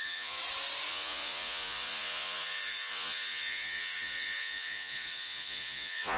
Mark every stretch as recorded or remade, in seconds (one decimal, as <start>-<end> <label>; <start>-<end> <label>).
0.0-0.4 remade; 0.4-0.9 recorded; 0.9-6.2 remade